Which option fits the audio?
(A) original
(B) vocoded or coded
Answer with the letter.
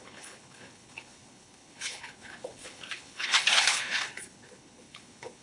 B